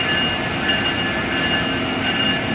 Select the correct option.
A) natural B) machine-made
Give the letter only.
A